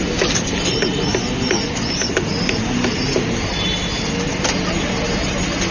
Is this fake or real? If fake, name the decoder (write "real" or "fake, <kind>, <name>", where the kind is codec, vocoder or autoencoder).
real